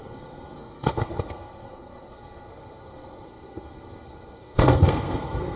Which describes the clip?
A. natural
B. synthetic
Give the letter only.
B